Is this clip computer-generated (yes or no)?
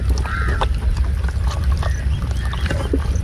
no